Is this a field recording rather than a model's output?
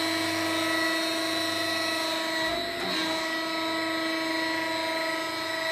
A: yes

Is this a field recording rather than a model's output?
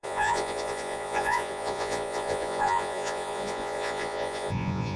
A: no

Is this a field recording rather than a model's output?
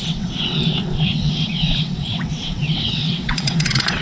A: no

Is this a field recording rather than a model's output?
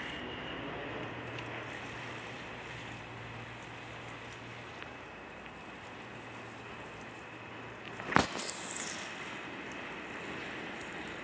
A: yes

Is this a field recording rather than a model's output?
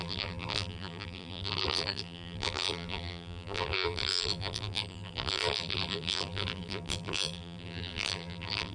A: no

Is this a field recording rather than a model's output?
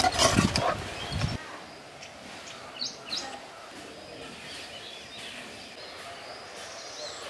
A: yes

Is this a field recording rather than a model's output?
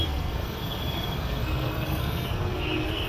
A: no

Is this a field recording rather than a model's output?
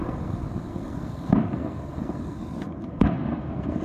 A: no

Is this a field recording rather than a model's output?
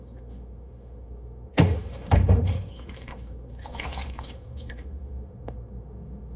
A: no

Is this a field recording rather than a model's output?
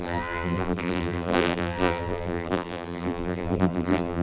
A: no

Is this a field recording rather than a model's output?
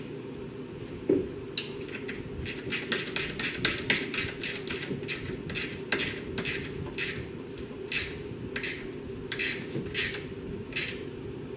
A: yes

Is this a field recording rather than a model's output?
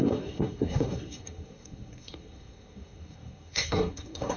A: no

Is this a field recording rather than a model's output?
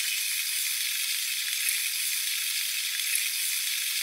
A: yes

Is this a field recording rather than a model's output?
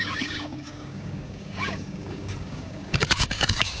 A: no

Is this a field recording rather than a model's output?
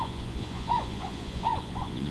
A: no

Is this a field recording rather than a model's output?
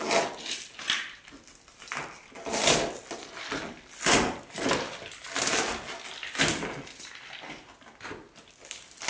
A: yes